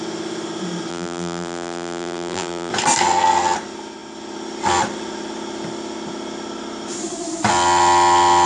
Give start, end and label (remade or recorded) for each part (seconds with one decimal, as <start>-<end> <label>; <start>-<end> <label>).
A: 0.0-0.9 recorded; 0.9-2.7 remade; 2.7-8.5 recorded